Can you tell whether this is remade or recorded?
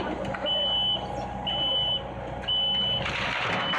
recorded